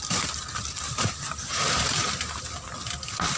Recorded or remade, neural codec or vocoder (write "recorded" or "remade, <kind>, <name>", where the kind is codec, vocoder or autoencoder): recorded